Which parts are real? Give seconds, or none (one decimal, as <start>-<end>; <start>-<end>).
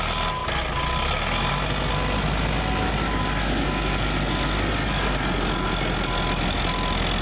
0.0-7.2